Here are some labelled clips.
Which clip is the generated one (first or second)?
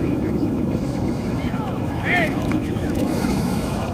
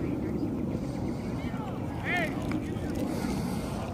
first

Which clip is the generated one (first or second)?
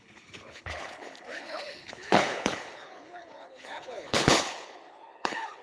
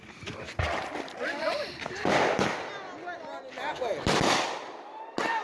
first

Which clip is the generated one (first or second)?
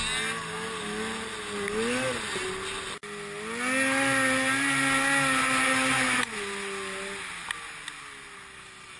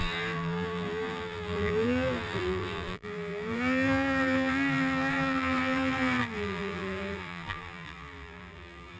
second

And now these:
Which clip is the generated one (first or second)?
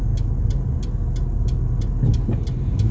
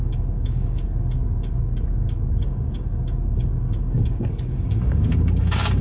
second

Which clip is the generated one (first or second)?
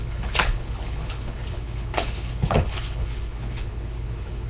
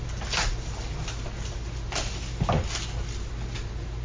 first